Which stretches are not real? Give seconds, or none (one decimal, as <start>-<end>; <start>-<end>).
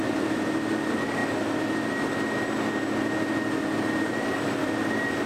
0.0-1.2; 4.4-5.3